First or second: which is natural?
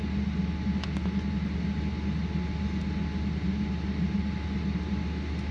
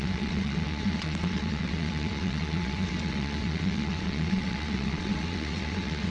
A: first